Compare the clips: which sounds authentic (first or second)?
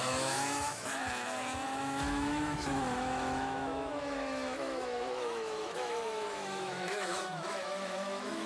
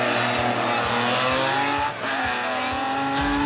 second